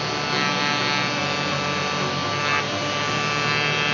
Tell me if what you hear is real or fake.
real